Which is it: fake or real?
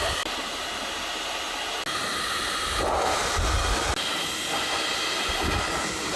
real